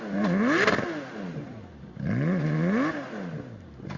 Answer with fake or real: real